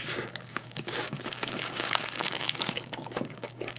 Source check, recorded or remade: remade